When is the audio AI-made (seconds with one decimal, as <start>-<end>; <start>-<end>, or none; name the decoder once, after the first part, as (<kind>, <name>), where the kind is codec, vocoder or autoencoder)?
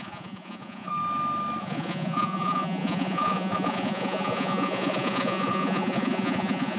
0.0-0.9 (vocoder, Vocos); 1.6-6.8